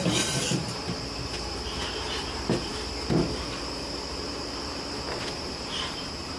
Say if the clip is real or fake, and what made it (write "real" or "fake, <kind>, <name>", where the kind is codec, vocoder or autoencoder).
fake, vocoder, BigVGAN v2